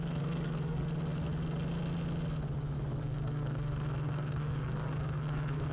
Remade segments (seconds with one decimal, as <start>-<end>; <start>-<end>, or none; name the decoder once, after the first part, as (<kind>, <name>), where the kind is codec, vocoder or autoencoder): 0.0-0.8 (codec, SNAC); 3.0-5.7